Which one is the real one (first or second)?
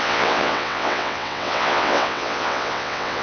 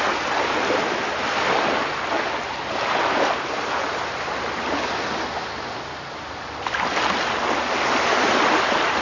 second